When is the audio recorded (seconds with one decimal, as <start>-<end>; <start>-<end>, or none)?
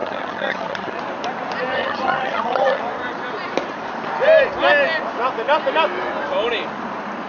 1.0-1.7; 2.8-7.3